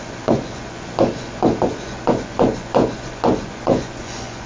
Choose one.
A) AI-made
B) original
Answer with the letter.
A